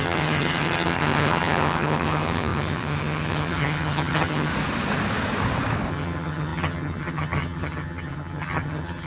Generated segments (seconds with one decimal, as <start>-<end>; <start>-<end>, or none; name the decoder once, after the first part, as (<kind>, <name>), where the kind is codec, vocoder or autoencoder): 0.0-4.5 (vocoder, HiFi-GAN); 5.9-9.1